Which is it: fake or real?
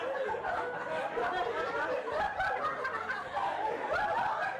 fake